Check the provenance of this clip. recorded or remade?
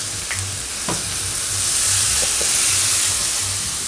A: recorded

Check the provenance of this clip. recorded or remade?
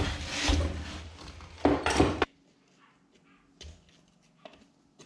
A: recorded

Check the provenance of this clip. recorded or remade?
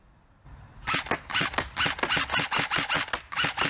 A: recorded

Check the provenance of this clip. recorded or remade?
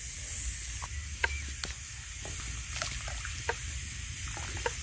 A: recorded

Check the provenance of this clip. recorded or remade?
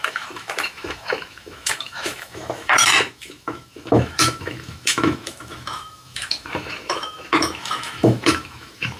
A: remade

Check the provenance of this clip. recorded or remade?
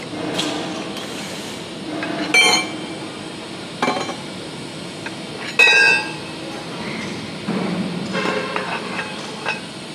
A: recorded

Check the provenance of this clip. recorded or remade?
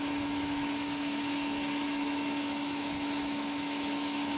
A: remade